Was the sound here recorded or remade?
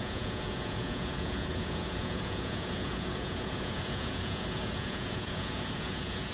remade